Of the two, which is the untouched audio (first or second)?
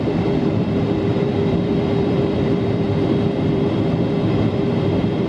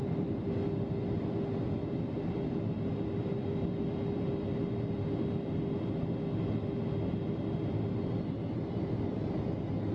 second